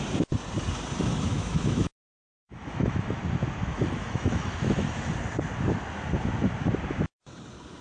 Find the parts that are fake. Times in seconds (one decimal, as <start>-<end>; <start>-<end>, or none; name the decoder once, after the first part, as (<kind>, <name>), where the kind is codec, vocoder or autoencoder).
1.1-3.2 (autoencoder, DAC-VAE); 3.7-5.1